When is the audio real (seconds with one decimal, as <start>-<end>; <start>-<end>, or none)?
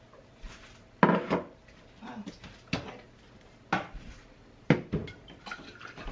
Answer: 0.0-6.1